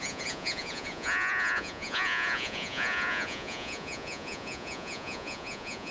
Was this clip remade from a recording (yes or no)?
yes